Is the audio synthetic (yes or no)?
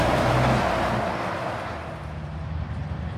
no